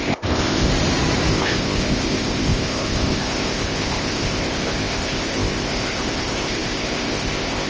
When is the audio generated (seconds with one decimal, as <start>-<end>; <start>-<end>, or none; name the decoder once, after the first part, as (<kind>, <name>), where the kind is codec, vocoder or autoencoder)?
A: 0.0-0.7 (codec, ZipCodec); 1.3-7.7